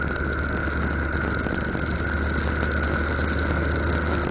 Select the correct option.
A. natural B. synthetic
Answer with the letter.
A